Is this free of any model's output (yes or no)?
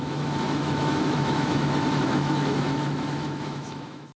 no